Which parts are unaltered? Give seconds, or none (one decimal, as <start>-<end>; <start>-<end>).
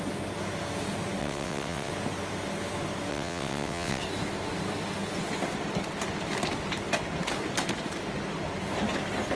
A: 0.0-1.2; 1.9-3.1; 4.0-9.4